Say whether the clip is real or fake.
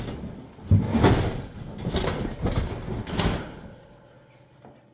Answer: real